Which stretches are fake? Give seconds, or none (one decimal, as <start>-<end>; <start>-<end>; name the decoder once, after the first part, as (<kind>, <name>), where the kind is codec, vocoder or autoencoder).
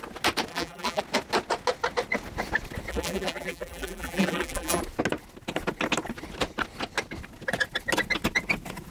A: 0.5-1.0 (vocoder, BigVGAN v2); 2.9-4.8